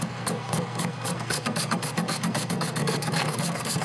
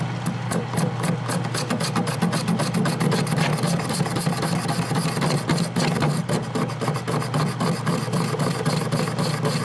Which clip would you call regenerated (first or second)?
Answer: first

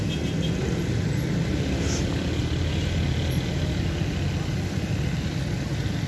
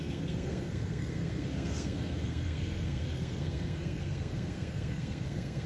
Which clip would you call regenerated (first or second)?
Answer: second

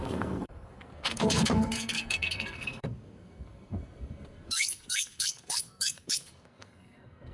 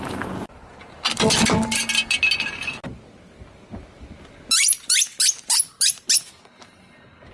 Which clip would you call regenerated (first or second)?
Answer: first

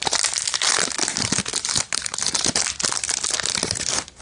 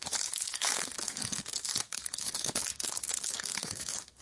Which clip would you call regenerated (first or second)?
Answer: second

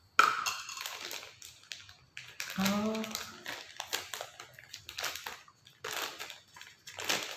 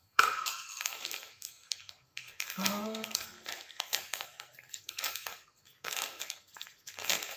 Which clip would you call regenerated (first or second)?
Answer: second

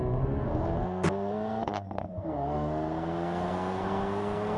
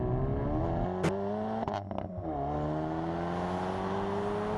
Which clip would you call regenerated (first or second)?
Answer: first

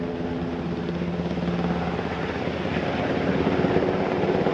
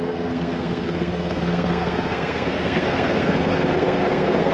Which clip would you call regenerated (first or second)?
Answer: second